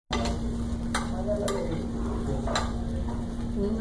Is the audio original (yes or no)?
yes